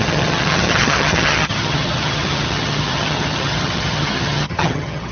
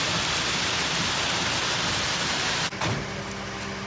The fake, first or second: first